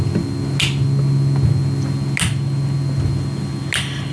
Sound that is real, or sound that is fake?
real